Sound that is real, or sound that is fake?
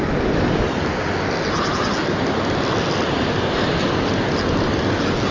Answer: real